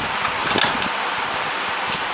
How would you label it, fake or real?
real